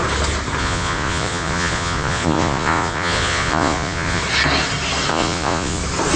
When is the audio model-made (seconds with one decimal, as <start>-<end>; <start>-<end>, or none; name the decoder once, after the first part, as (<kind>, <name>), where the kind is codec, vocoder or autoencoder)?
0.6-4.2 (vocoder, Vocos); 5.1-5.8